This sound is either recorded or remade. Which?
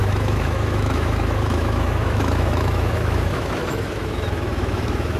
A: remade